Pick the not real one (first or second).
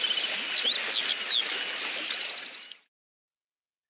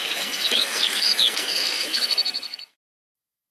second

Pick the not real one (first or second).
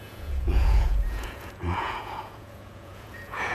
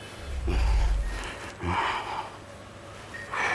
first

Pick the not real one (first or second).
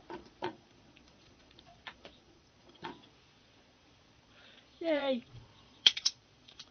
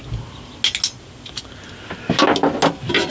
first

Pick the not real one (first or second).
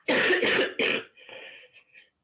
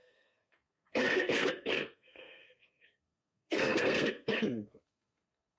second